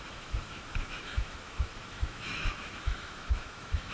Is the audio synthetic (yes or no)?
yes